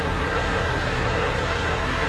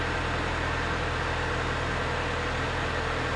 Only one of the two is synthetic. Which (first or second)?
first